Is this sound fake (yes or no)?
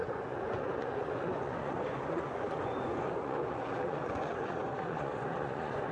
yes